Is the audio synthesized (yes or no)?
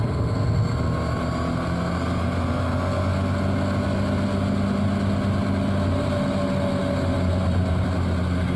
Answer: no